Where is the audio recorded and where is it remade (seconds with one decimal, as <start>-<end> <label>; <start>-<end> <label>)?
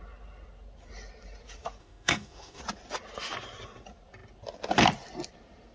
0.0-1.8 recorded; 1.8-2.6 remade; 2.6-5.7 recorded